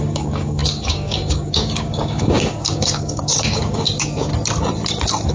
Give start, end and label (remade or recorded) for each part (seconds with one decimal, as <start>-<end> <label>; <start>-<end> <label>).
0.0-4.3 remade; 4.3-5.3 recorded